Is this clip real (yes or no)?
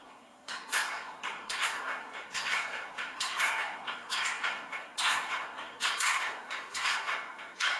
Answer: no